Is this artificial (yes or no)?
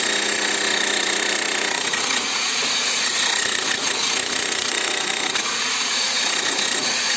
yes